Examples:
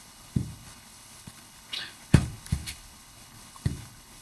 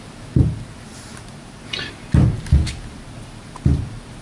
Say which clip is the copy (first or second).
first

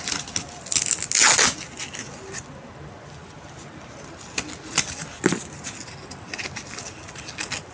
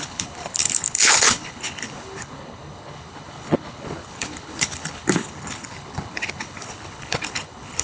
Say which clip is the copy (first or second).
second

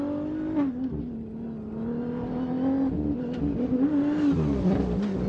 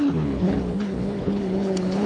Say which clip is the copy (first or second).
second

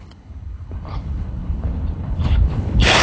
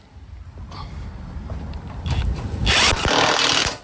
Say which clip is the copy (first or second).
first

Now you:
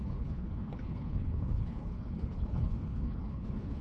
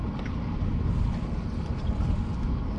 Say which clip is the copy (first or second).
first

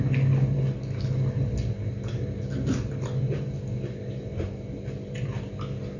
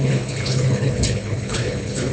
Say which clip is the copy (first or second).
second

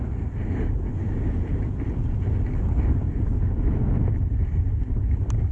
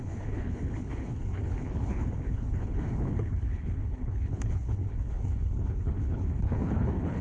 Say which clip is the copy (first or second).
second